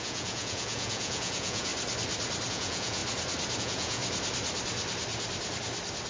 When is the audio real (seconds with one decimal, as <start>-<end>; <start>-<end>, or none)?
1.7-2.5; 3.0-3.6; 4.0-6.1

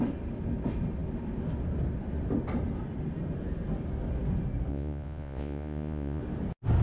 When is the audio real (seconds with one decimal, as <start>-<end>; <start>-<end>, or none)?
0.0-4.7; 6.2-6.8

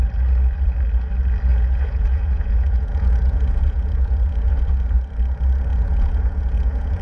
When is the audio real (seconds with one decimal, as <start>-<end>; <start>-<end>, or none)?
0.0-1.5; 4.5-5.7